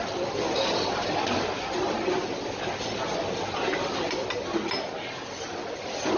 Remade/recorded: recorded